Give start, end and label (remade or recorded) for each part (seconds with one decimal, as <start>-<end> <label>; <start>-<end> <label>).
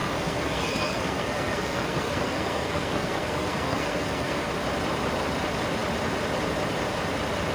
0.0-4.5 remade; 4.5-7.5 recorded